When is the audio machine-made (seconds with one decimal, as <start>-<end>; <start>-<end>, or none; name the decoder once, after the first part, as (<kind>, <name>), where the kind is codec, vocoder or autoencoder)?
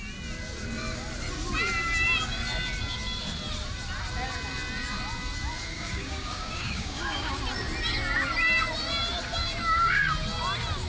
5.7-7.4 (codec, DAC)